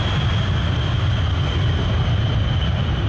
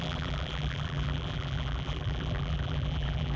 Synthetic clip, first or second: second